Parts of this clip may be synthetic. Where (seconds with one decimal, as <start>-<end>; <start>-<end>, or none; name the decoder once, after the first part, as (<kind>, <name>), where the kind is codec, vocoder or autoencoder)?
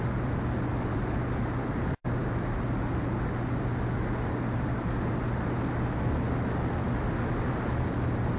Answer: none